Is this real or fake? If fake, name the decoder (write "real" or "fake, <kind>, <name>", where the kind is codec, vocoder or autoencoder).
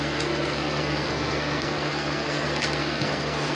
fake, codec, SNAC